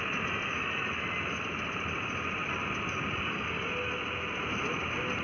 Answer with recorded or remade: recorded